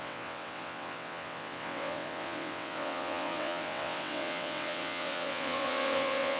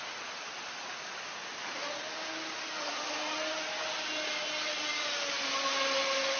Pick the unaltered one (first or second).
second